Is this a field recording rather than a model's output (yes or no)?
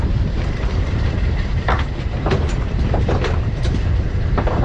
no